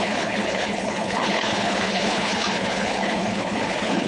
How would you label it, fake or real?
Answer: fake